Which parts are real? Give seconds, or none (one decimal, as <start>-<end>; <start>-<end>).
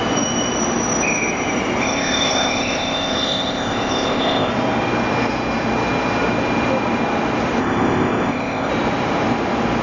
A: 0.0-1.8; 4.5-7.6; 8.7-9.8